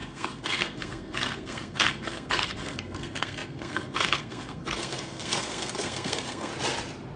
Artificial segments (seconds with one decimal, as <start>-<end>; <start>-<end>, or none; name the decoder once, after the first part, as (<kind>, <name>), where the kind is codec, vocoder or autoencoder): 0.0-6.5 (codec, SNAC)